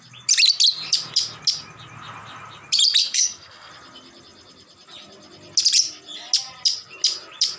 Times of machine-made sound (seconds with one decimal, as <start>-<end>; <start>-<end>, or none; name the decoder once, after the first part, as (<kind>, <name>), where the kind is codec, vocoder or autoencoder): 3.0-3.7 (codec, SNAC)